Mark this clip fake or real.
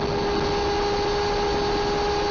real